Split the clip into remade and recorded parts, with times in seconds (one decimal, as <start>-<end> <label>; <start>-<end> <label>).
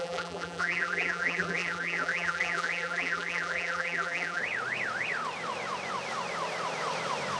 0.0-4.4 remade; 4.4-7.4 recorded